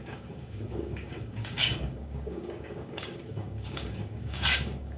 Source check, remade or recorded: remade